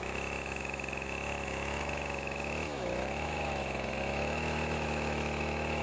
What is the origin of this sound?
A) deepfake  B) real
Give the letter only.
A